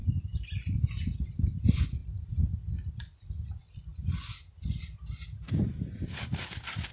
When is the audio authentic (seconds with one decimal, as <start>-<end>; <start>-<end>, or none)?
0.0-0.9; 2.0-3.1